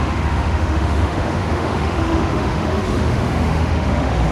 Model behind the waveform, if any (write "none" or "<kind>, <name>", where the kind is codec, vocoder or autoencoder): autoencoder, DAC-VAE